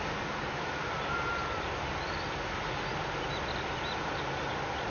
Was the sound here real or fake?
real